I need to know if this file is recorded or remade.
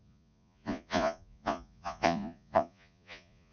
remade